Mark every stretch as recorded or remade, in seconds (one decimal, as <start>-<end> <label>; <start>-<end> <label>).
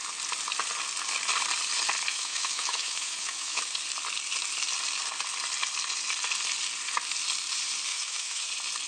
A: 0.0-2.1 recorded; 2.1-3.6 remade; 3.6-7.9 recorded; 7.9-8.5 remade; 8.5-8.9 recorded